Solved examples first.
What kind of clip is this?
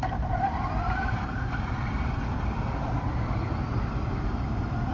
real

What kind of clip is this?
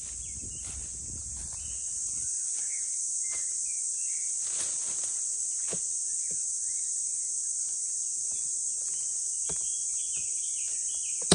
real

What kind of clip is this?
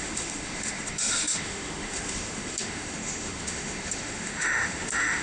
fake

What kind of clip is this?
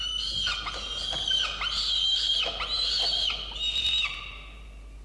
real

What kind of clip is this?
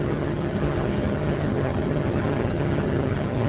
fake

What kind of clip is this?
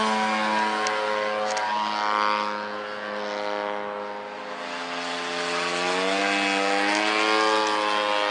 real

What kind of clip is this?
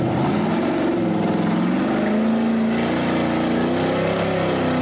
real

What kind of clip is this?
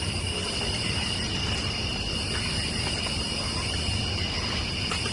real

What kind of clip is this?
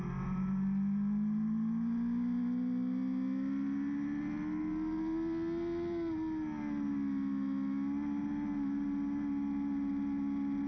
real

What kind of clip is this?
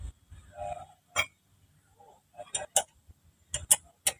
real